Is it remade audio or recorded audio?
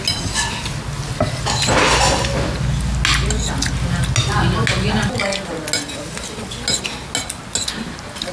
recorded